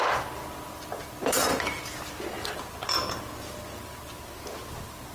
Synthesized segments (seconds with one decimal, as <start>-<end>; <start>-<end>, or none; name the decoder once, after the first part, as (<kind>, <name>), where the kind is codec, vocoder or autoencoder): none